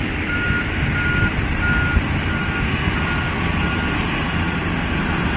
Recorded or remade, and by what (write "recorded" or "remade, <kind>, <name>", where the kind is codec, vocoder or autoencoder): recorded